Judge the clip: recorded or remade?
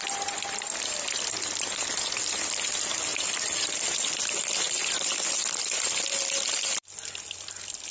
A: recorded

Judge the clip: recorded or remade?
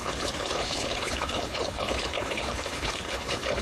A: remade